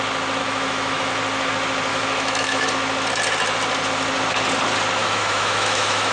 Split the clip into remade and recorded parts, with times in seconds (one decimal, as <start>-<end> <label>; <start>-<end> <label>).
0.0-0.4 recorded; 0.4-1.1 remade; 1.1-1.9 recorded; 1.9-2.7 remade; 2.7-5.0 recorded; 5.0-6.1 remade